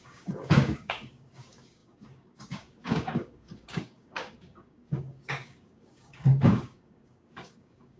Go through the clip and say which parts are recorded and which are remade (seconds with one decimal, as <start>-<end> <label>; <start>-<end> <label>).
0.0-8.0 remade